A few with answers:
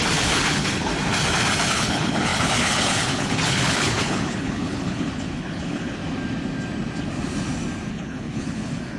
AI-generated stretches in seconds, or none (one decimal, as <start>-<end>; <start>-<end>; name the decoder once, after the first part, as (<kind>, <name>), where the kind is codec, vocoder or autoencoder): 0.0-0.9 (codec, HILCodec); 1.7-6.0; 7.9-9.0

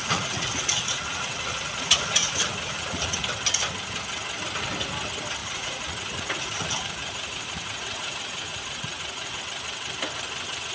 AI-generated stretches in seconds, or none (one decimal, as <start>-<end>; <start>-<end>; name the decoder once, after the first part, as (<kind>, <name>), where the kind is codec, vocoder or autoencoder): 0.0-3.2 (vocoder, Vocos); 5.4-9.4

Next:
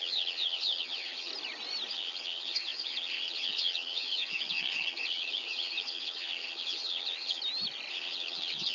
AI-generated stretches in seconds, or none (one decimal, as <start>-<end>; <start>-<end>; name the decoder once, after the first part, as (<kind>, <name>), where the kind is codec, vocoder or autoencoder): 0.0-1.3 (vocoder, HiFi-GAN); 1.9-7.4; 7.9-8.7

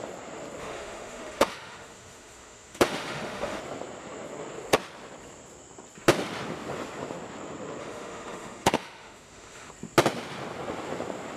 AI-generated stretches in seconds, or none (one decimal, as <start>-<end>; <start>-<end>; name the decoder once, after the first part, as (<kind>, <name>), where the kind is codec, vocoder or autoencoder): 0.6-3.6 (autoencoder, DAC-VAE); 7.8-9.7